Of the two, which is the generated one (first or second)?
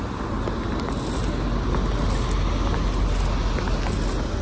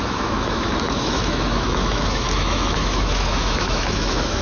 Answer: second